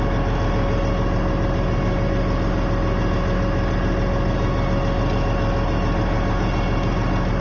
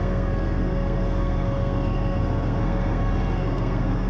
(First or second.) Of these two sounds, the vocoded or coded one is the second